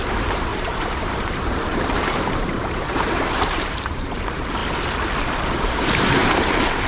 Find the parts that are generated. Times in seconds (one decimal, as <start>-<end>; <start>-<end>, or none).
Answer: 0.0-4.6; 5.6-6.9